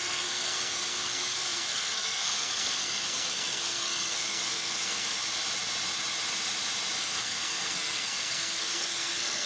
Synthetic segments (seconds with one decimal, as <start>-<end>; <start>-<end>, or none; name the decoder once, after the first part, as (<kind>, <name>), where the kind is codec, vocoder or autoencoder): 0.0-5.2 (codec, SNAC); 7.0-9.5